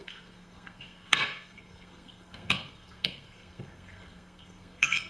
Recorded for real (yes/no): no